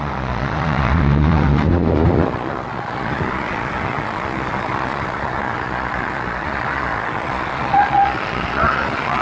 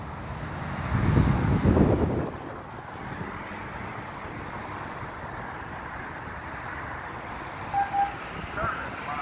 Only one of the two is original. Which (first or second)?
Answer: second